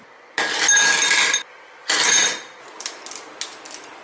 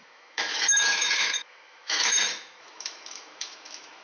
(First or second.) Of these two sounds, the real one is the first